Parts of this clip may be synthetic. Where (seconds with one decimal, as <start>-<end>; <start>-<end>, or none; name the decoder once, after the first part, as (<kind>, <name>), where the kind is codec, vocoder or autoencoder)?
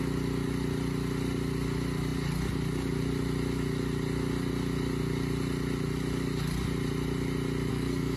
7.7-8.2 (codec, SNAC)